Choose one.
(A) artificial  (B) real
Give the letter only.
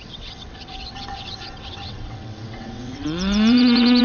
A